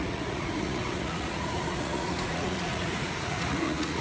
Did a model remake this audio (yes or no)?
yes